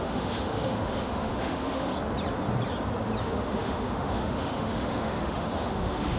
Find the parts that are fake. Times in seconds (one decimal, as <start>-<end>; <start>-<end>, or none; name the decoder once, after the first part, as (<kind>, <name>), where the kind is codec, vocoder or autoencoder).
0.0-1.9 (autoencoder, DAC-VAE); 3.2-6.2